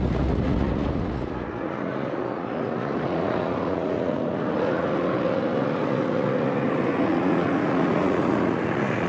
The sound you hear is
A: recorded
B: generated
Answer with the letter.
B